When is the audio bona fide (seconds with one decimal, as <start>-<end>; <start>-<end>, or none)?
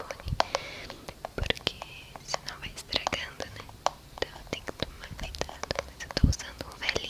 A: 0.0-7.1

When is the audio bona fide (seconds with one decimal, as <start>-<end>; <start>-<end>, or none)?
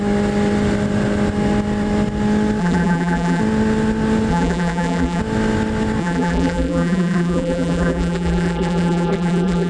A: 0.0-2.6; 3.4-4.3; 5.2-6.0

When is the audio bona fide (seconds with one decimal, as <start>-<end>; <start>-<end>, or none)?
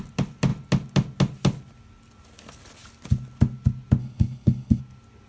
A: 0.0-4.0; 4.8-5.3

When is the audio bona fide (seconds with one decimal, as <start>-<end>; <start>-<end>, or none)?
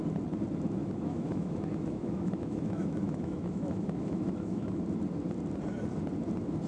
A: 0.0-0.8; 4.8-6.7